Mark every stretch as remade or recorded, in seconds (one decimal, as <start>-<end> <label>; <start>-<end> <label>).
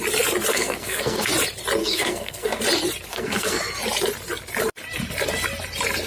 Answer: 0.0-0.5 recorded; 0.5-1.3 remade; 1.3-1.8 recorded; 1.8-2.6 remade; 2.6-3.1 recorded; 3.1-3.6 remade; 3.6-6.1 recorded